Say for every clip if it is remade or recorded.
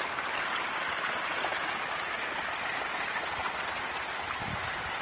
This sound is recorded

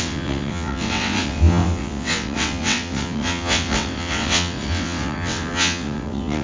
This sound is remade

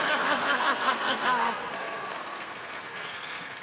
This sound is remade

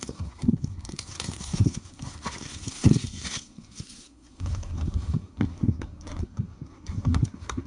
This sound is remade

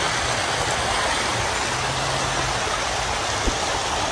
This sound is recorded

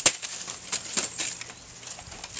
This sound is recorded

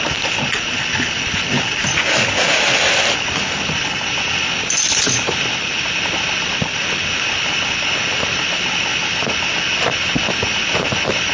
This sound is recorded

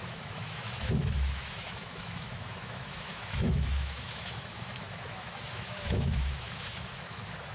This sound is remade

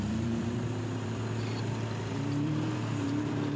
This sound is remade